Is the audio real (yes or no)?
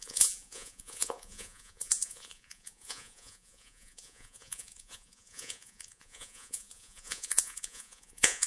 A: no